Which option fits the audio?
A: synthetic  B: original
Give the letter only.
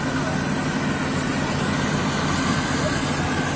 B